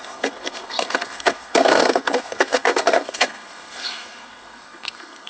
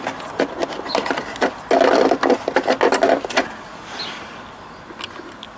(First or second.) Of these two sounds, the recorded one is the second